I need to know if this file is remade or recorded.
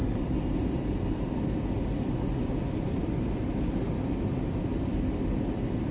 recorded